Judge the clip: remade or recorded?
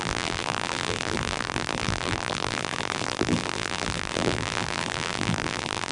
remade